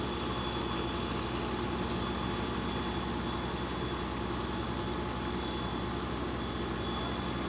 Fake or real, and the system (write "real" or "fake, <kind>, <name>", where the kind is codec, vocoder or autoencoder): real